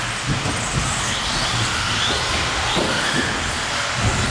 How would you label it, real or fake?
real